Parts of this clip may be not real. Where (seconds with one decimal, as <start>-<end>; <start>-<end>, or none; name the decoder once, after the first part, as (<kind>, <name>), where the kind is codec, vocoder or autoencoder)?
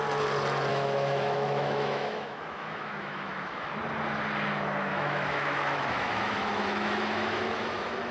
0.7-3.7 (autoencoder, DAC-VAE); 4.9-8.1